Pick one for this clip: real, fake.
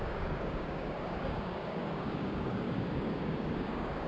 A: fake